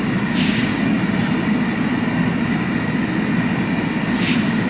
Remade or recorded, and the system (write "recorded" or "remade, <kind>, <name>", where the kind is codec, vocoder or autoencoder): recorded